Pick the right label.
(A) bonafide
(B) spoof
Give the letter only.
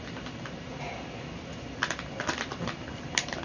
A